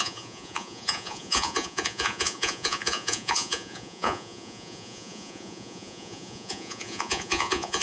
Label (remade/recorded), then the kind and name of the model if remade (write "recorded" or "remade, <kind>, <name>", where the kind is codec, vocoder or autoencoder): remade, vocoder, Vocos